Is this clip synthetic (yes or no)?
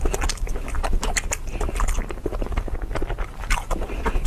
no